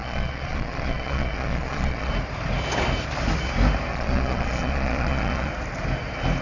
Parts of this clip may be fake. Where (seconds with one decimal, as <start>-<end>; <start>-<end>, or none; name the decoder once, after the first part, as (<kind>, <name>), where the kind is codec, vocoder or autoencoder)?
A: 0.0-2.1 (vocoder, Vocos); 3.9-5.5

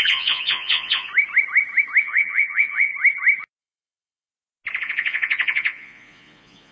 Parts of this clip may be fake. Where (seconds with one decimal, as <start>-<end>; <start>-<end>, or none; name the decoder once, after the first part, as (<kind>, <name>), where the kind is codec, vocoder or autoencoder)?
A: 0.0-1.1 (vocoder, Vocos); 2.0-2.9; 3.6-4.3; 4.8-6.7

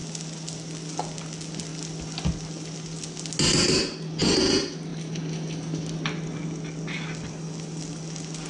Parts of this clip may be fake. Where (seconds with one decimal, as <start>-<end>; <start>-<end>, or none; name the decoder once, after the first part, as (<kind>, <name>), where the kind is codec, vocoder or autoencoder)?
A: none

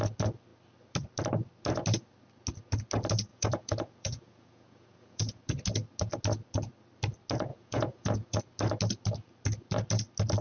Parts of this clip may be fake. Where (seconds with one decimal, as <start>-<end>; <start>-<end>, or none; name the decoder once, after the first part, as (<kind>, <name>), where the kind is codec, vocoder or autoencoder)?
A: 3.3-5.4 (vocoder, Vocos); 7.5-8.4

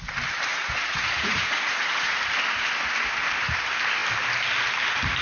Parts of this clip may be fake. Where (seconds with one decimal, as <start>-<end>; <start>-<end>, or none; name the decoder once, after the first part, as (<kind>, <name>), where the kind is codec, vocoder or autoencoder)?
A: 0.5-2.2 (vocoder, Vocos)

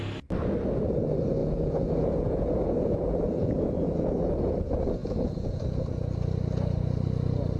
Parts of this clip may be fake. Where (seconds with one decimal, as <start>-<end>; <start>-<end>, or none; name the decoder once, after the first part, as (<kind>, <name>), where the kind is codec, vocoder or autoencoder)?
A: 1.4-4.1 (vocoder, Vocos); 5.0-5.6

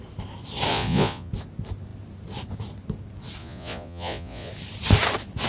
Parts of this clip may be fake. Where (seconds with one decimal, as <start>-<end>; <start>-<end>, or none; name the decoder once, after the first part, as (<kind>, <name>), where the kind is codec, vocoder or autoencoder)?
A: 0.7-1.3 (vocoder, Vocos); 3.4-4.5